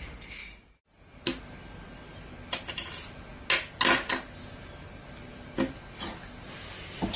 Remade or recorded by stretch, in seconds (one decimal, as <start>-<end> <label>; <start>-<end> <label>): 0.0-7.2 recorded